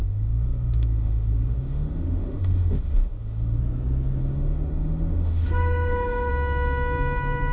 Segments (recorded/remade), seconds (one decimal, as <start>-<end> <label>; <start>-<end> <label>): 0.0-3.6 remade; 3.6-4.2 recorded; 4.2-6.3 remade; 6.3-7.5 recorded